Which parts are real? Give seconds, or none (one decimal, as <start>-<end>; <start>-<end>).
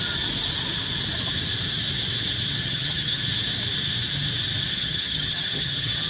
0.0-2.6; 3.2-4.7